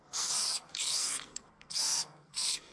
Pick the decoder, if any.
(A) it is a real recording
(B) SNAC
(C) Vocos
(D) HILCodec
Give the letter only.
B